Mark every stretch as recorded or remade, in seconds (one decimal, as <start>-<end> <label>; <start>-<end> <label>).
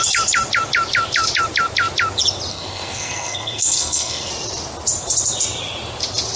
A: 0.0-2.5 recorded; 2.5-4.3 remade; 4.3-6.4 recorded